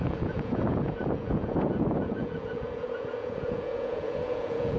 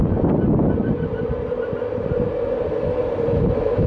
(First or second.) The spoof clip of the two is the first